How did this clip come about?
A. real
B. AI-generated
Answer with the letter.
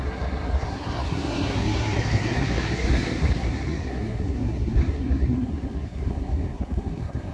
B